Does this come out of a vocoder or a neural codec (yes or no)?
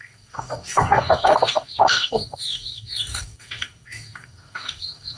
yes